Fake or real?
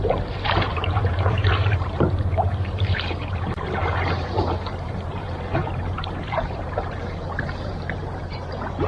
fake